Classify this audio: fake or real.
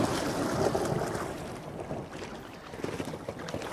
real